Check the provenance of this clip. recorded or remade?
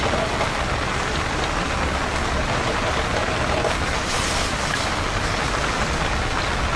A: recorded